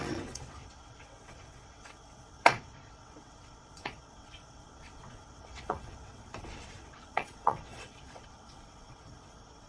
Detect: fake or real fake